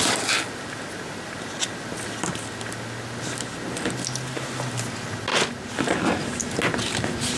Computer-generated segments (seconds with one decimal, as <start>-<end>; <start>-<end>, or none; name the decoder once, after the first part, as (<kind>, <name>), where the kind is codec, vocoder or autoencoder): none